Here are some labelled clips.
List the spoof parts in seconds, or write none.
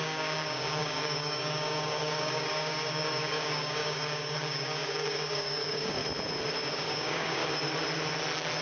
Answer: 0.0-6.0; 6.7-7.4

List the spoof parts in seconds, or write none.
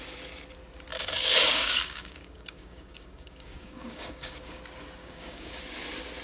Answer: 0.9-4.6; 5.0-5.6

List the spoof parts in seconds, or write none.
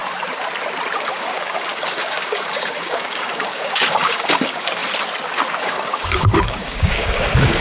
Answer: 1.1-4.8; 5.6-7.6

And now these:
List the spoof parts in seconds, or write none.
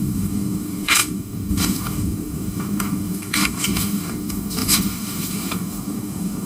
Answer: 0.0-6.5